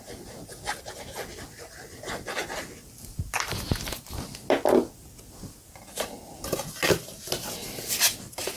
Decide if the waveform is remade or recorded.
recorded